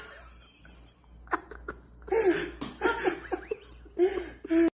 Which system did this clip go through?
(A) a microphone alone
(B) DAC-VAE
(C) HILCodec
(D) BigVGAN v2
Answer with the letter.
A